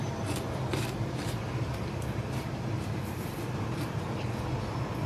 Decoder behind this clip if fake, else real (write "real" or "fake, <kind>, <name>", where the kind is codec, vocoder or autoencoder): fake, vocoder, BigVGAN v2